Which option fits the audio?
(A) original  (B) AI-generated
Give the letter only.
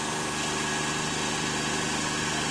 A